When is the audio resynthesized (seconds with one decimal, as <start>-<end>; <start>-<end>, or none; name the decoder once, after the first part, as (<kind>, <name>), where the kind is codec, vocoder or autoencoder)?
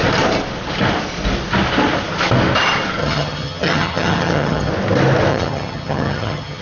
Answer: 3.0-4.7 (vocoder, HiFi-GAN); 5.3-6.6